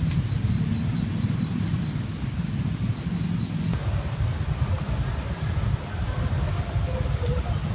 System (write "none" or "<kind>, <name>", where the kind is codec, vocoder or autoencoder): none